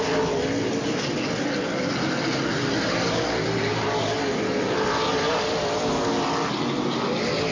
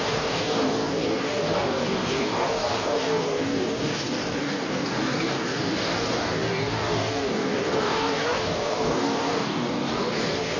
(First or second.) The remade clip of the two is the second